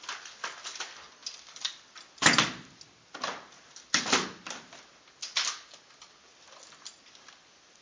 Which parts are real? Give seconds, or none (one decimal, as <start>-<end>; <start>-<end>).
0.0-7.8